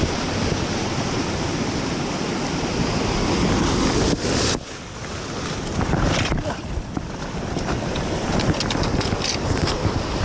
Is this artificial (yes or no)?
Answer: yes